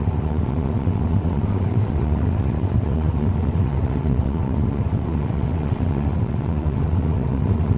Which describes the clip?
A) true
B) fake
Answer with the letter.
B